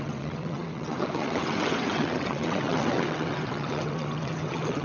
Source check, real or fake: fake